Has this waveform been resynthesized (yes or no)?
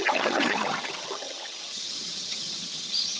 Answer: yes